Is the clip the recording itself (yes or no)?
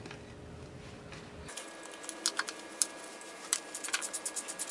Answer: yes